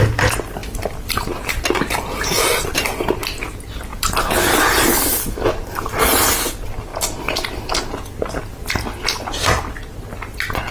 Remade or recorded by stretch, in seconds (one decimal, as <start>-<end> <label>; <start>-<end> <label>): 0.0-3.9 recorded; 3.9-4.9 remade; 4.9-10.7 recorded